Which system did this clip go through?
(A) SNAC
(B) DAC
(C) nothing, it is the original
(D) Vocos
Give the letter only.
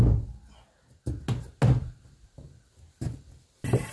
C